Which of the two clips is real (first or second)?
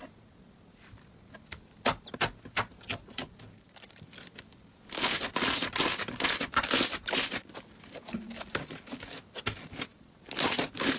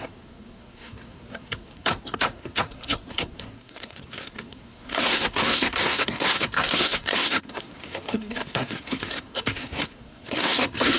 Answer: first